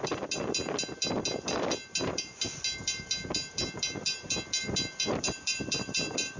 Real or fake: real